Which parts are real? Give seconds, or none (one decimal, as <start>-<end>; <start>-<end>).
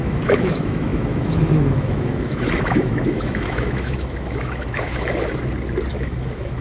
5.3-5.9